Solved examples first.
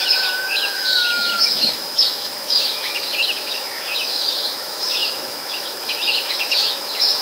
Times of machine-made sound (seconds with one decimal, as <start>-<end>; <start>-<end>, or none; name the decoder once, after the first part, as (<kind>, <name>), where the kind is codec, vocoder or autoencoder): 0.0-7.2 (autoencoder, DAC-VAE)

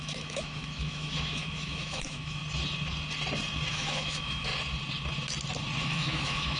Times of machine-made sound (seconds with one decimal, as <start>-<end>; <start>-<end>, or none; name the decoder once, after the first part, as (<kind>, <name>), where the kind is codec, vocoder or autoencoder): 0.0-2.4 (autoencoder, DAC-VAE); 3.7-4.5; 5.8-6.6

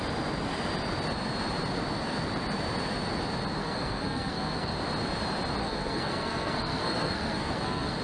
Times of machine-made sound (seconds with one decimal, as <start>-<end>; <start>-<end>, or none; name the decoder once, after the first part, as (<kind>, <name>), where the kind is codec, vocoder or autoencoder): 3.6-4.7 (codec, SNAC); 5.6-8.0

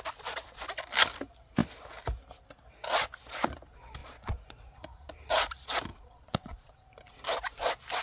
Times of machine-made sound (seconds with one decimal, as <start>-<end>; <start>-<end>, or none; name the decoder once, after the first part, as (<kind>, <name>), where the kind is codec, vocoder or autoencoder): 4.0-5.1 (vocoder, Vocos); 5.9-6.9